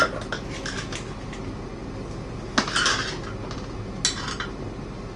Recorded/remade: recorded